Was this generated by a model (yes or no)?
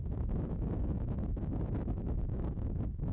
yes